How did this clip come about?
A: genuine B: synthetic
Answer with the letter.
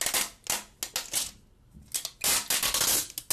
A